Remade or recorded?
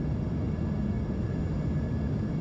recorded